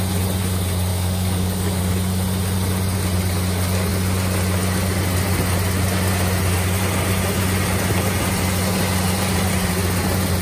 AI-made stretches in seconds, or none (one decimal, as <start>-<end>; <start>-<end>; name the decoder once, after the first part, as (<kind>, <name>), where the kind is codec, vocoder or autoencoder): 0.9-1.8 (codec, DAC)